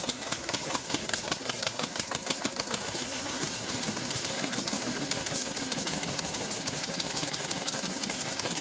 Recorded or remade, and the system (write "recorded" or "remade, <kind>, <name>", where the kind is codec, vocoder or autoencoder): remade, codec, SNAC